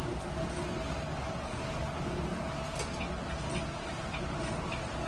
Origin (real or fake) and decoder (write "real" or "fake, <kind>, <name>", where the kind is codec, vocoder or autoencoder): real